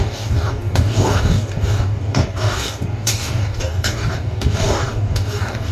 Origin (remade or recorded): remade